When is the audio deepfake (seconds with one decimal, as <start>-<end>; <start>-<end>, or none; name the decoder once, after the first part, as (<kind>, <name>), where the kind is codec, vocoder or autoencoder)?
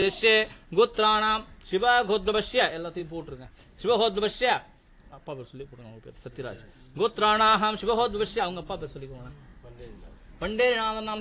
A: none